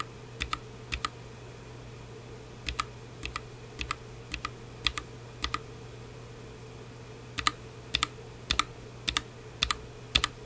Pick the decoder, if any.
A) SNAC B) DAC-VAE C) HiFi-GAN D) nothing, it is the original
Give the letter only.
D